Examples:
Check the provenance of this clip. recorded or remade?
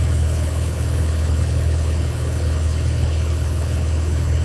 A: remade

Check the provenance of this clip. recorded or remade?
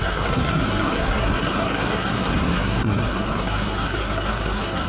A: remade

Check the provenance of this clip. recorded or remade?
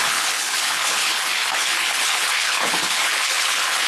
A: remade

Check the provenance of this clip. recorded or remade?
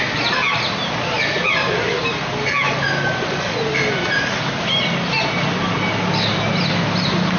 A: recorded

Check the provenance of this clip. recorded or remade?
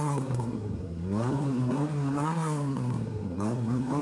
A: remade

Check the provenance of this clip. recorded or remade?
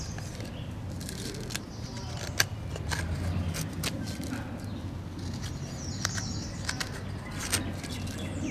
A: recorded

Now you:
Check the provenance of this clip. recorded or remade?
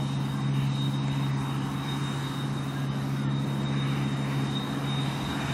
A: recorded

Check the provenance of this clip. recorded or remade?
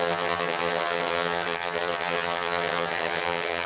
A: remade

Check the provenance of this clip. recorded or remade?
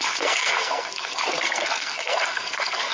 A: remade